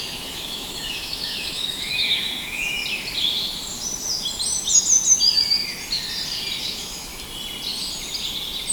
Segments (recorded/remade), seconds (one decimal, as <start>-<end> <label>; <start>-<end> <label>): 0.0-2.8 remade; 2.8-6.6 recorded; 6.6-7.1 remade; 7.1-8.7 recorded